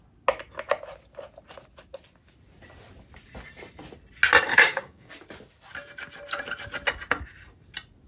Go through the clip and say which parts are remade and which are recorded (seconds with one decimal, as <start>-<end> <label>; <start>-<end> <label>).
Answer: 0.0-4.5 recorded; 4.5-5.1 remade; 5.1-8.1 recorded